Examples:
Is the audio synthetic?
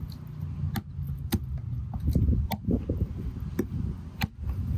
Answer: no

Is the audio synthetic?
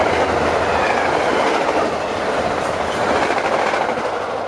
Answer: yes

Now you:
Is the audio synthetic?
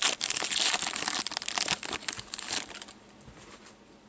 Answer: no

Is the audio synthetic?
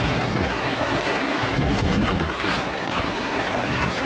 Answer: yes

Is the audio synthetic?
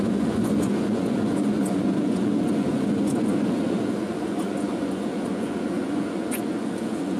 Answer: yes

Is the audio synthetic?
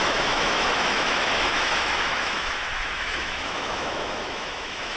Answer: yes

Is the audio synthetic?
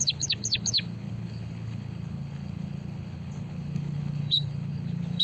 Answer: yes